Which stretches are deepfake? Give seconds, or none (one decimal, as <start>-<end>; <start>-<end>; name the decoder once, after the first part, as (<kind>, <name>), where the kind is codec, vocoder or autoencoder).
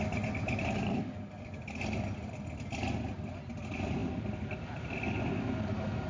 none